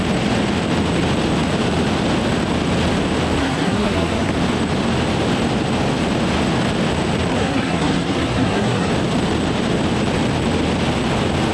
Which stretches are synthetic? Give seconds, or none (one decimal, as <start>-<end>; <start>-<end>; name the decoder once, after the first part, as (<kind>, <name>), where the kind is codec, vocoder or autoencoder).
3.4-4.3 (codec, SNAC); 7.3-8.9